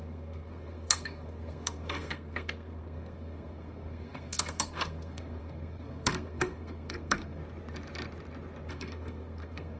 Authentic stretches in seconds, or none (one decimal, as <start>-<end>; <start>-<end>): 7.4-8.7

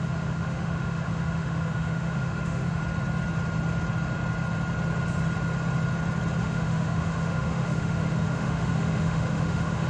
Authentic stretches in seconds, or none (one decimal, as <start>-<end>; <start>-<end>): 2.8-6.4

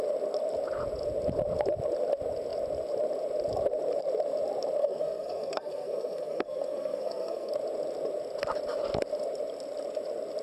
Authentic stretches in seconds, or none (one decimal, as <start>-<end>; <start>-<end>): 0.0-4.8; 7.5-10.4

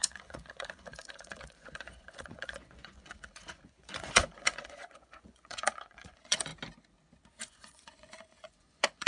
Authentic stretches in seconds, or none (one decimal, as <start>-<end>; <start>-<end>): 6.5-7.4

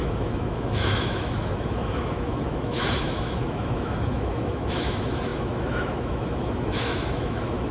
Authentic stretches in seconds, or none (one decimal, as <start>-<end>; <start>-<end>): none

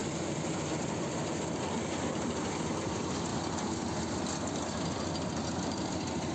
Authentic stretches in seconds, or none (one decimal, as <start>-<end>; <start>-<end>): 3.3-5.6

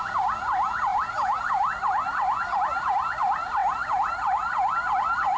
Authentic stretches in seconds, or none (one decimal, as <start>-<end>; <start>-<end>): 0.0-5.4

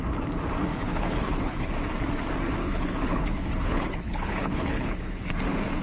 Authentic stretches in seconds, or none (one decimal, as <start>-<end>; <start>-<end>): 0.0-0.7; 1.7-2.6; 5.3-5.8